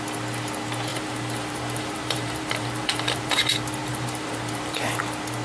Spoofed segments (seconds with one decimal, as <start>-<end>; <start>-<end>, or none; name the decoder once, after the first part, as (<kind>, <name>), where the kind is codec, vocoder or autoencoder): 0.9-3.4 (vocoder, BigVGAN v2); 3.9-5.0

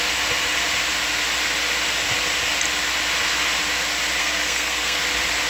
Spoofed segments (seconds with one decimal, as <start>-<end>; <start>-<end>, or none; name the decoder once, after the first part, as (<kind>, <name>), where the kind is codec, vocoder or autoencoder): 4.2-5.0 (codec, SNAC)

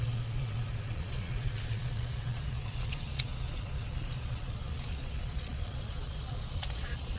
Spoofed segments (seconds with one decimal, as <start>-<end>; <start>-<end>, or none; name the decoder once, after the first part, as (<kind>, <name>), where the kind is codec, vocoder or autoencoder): 0.0-7.2 (vocoder, Vocos)

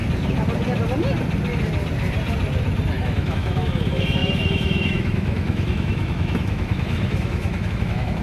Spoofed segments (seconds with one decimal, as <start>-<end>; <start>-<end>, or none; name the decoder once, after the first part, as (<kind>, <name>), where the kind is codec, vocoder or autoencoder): 3.0-8.2 (autoencoder, DAC-VAE)